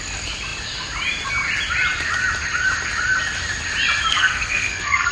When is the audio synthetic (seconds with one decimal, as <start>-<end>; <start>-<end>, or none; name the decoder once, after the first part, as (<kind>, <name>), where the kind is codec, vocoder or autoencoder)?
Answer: 4.1-5.1 (codec, SNAC)